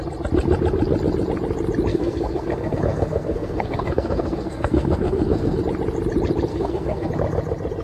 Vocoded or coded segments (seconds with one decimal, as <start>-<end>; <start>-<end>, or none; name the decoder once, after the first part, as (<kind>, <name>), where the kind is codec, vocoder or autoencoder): 1.9-5.6 (codec, SNAC); 6.5-7.1